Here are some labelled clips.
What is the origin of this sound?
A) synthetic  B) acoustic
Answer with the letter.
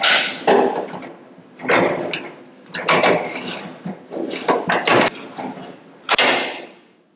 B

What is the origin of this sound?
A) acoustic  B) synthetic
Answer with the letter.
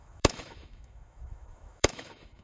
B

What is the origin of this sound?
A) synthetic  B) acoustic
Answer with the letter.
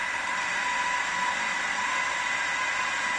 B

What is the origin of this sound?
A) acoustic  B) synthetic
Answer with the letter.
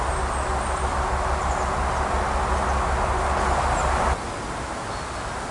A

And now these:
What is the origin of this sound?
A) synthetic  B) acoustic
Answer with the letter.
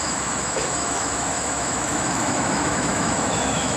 A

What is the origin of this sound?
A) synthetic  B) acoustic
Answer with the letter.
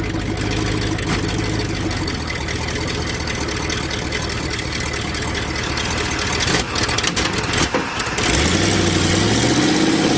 B